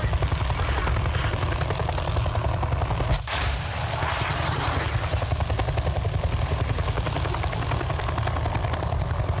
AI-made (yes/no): no